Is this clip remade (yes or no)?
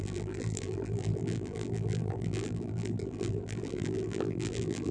yes